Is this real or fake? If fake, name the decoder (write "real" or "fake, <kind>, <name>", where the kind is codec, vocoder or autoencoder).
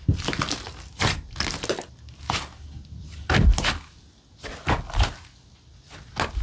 real